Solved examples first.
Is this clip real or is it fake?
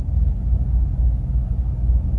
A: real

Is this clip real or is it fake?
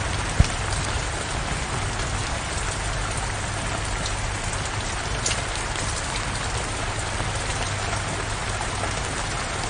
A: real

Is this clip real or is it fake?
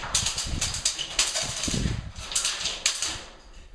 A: fake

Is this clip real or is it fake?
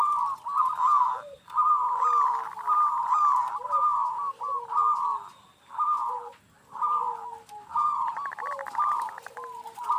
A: real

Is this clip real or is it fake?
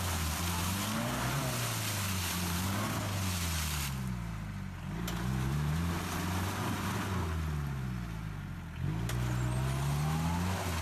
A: real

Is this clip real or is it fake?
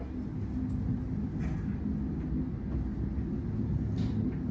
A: real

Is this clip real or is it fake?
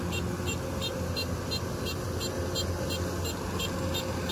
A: real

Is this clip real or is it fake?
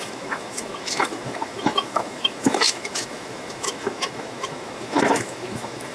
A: fake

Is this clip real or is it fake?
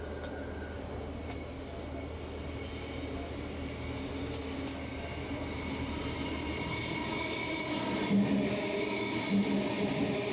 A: real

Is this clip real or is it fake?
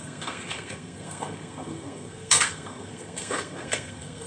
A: fake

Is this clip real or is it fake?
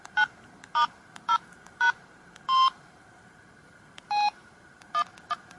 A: fake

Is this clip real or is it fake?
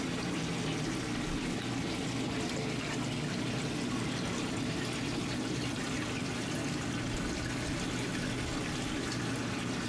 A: real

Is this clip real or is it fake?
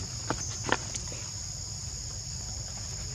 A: real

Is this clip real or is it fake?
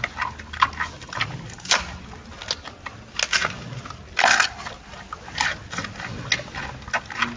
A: real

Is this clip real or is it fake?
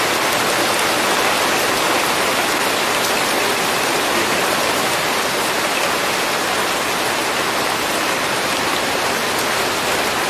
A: real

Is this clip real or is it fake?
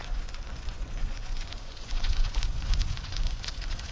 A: fake